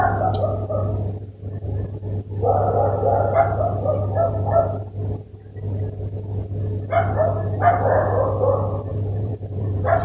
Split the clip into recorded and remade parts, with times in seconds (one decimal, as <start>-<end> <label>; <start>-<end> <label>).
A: 0.0-8.9 recorded; 8.9-10.0 remade